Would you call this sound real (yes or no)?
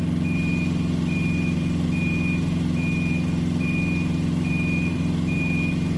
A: no